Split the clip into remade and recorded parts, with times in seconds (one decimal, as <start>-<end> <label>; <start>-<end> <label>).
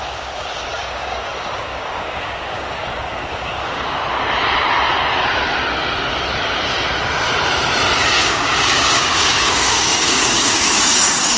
0.0-4.0 remade; 4.0-8.0 recorded; 8.0-11.4 remade